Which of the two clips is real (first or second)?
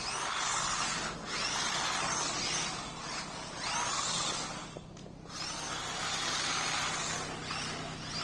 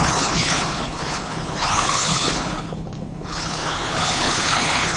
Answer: first